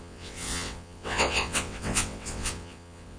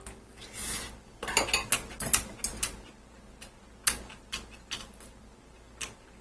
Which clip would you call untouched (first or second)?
second